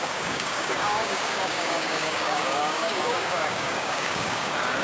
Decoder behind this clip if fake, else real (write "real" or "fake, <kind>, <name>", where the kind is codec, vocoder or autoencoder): fake, codec, DAC